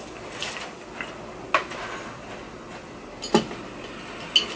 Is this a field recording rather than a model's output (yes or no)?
yes